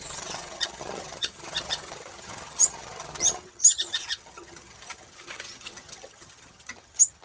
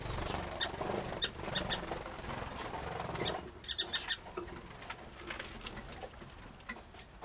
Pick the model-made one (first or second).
first